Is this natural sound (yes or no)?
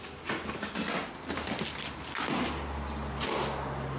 yes